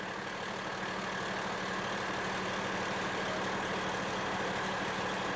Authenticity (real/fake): real